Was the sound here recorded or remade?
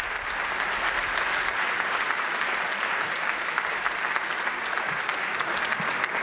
recorded